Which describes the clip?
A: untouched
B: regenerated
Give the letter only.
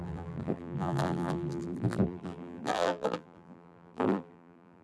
B